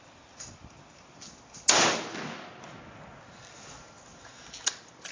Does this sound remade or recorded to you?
recorded